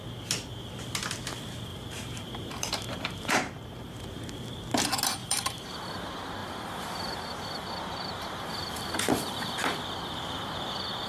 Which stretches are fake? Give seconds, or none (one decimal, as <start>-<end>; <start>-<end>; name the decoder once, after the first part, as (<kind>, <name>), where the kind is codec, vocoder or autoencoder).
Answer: 1.7-4.0 (vocoder, BigVGAN v2); 5.2-5.8; 6.4-9.6